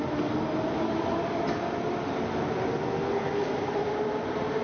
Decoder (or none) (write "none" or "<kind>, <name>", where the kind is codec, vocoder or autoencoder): none